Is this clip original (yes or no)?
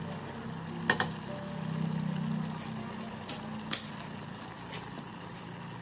yes